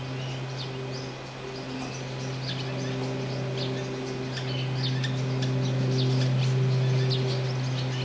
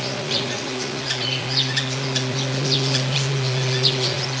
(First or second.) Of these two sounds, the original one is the first